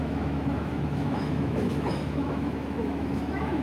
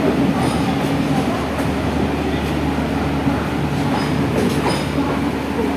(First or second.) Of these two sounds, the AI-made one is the first